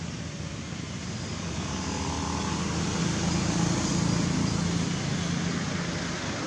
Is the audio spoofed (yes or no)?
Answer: no